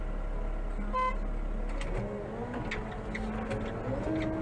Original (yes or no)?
yes